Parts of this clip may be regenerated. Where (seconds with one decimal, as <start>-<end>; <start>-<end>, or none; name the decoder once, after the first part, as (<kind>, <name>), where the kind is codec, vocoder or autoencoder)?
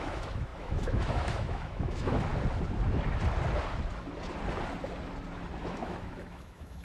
0.0-2.3 (autoencoder, DAC-VAE); 5.6-6.8